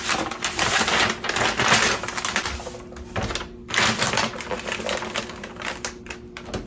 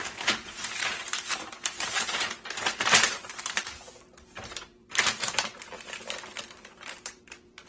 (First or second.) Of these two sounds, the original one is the first